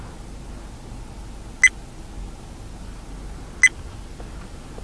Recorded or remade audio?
recorded